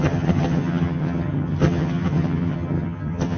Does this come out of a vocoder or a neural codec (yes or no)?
yes